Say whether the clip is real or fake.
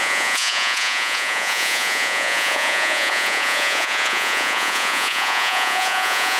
fake